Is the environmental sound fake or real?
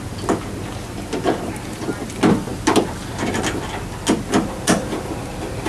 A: real